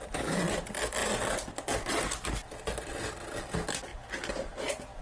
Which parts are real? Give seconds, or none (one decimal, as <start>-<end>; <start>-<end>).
0.0-5.0